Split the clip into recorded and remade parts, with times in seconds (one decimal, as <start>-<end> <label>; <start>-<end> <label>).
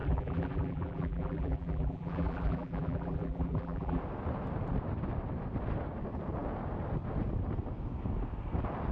0.0-4.0 remade; 4.0-8.9 recorded